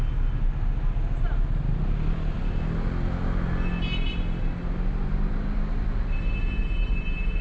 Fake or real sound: real